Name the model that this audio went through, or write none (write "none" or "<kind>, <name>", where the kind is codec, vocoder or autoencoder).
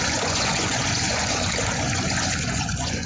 vocoder, Vocos